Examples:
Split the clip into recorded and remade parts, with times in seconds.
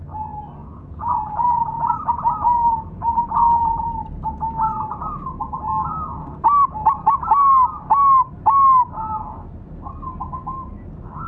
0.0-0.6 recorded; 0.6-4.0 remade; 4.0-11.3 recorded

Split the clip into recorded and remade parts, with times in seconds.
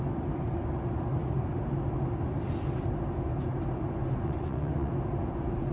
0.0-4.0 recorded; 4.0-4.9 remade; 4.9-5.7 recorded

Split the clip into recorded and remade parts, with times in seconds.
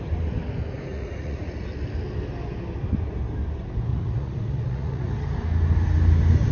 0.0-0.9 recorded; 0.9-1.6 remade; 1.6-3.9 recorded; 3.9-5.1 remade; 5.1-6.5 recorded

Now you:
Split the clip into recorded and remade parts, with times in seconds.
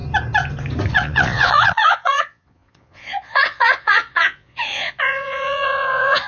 0.0-0.9 recorded; 0.9-6.3 remade